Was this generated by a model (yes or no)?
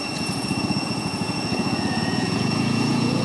yes